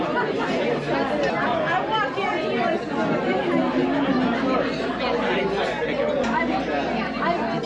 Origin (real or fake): real